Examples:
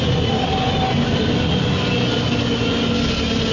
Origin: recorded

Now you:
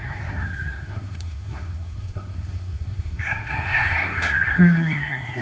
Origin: remade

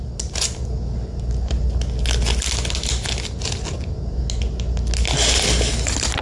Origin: recorded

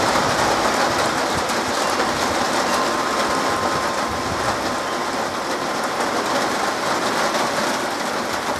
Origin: recorded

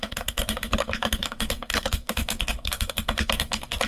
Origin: remade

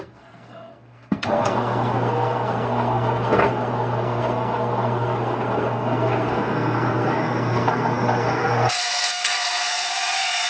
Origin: remade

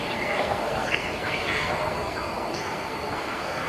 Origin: remade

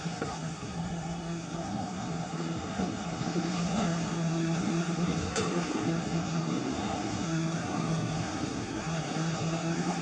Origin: remade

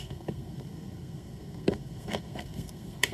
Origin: remade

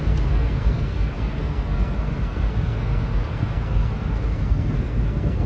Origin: remade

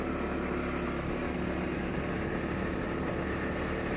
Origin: recorded